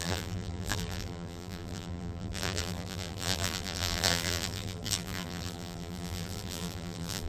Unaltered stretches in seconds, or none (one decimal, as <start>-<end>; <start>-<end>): none